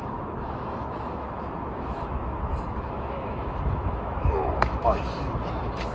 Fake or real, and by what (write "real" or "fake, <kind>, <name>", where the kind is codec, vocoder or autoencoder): fake, autoencoder, DAC-VAE